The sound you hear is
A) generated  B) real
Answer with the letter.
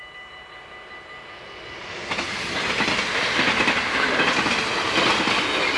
B